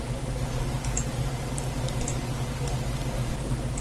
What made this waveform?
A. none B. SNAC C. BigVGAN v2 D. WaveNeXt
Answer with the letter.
A